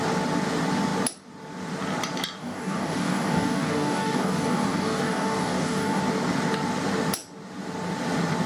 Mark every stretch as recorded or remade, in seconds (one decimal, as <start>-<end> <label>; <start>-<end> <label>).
0.0-2.4 recorded; 2.4-6.0 remade; 6.0-8.5 recorded